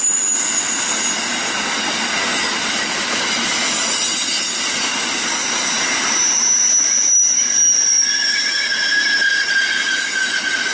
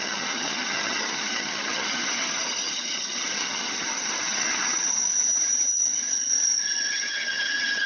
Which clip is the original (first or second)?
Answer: first